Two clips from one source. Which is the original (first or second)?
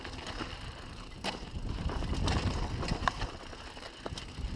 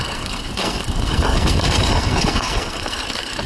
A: first